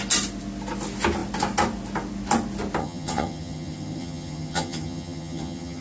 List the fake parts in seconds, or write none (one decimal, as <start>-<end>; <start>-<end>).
2.8-5.8